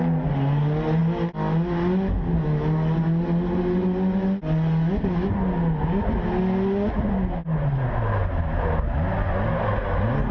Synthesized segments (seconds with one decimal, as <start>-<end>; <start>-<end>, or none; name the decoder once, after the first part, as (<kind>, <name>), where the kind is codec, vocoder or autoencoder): none